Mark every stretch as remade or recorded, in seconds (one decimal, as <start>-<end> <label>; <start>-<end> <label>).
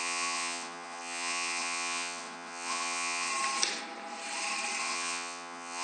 0.0-3.3 remade; 3.3-4.8 recorded; 4.8-5.8 remade